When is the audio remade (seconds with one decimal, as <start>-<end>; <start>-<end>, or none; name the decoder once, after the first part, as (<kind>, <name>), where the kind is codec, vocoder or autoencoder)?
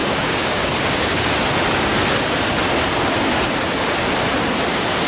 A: 0.0-1.3 (codec, DAC)